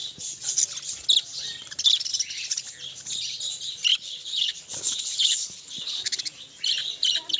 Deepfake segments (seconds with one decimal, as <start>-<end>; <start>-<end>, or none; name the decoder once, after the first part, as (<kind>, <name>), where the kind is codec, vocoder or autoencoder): 3.9-6.2 (codec, HILCodec)